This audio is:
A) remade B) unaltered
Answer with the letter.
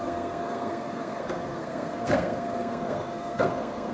A